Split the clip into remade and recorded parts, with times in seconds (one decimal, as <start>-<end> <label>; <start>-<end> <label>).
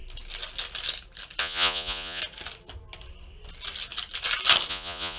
0.0-1.4 recorded; 1.4-2.2 remade; 2.2-4.7 recorded; 4.7-5.2 remade